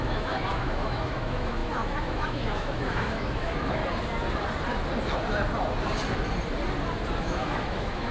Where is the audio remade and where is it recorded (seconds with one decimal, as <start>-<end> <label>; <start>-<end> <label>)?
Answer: 0.0-3.8 remade; 3.8-7.2 recorded; 7.2-8.1 remade